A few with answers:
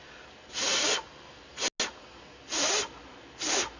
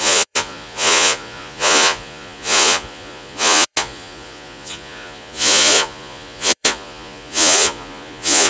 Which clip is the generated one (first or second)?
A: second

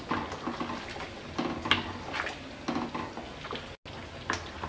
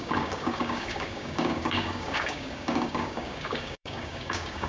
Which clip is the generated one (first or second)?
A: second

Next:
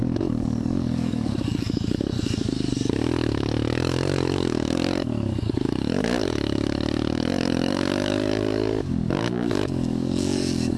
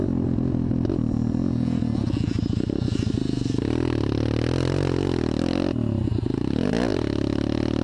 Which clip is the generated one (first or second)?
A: first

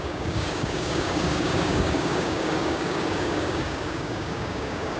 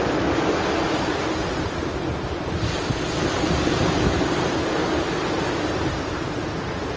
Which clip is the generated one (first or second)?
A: first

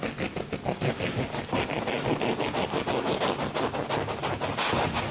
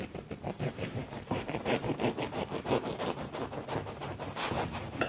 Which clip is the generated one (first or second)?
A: second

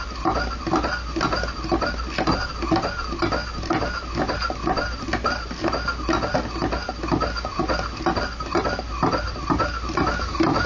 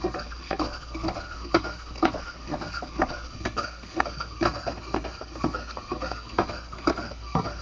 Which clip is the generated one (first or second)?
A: second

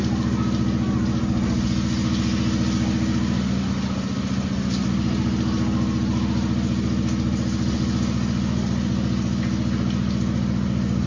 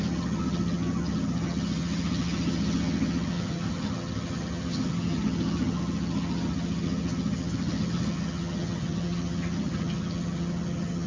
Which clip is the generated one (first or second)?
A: second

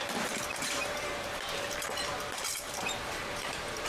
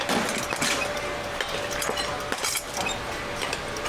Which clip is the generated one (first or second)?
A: first